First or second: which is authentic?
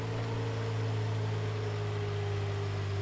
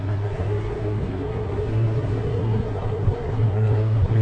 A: first